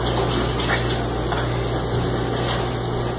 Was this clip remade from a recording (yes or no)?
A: no